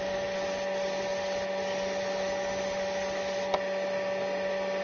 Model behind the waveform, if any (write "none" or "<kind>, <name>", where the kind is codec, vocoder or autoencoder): none